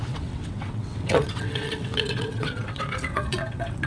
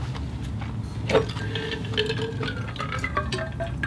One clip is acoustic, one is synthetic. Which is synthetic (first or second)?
first